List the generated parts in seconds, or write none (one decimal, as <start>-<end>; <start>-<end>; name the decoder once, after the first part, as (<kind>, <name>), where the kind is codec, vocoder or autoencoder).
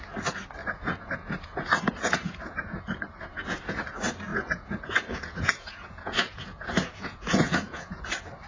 0.6-2.8 (vocoder, Vocos); 3.3-3.8; 4.3-8.0